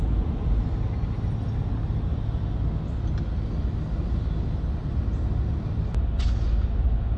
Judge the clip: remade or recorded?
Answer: recorded